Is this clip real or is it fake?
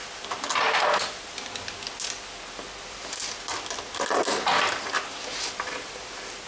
real